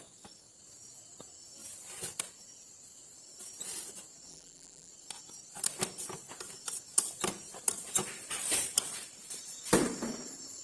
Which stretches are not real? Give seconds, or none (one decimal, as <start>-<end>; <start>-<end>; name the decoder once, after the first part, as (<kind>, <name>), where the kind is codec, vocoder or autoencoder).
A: 4.3-4.9 (vocoder, BigVGAN v2)